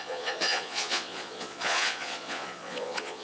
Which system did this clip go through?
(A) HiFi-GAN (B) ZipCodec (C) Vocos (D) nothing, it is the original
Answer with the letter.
C